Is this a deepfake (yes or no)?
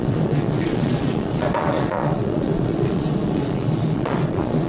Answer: yes